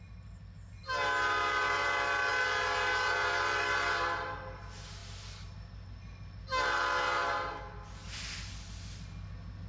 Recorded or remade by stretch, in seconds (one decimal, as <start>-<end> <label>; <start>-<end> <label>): 0.0-9.7 recorded